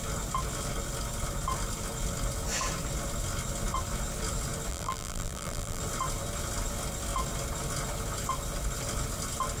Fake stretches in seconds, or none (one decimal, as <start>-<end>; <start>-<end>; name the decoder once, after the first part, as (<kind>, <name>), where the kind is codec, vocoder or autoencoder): 4.7-5.8 (vocoder, BigVGAN v2)